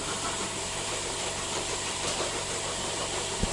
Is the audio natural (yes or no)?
no